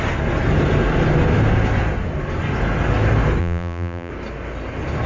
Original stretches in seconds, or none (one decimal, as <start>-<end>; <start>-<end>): 0.0-3.4; 4.1-5.1